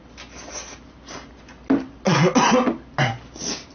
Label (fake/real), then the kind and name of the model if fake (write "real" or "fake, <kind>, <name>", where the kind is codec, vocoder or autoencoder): real